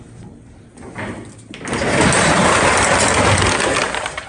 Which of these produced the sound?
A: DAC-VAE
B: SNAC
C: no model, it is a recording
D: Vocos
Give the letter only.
C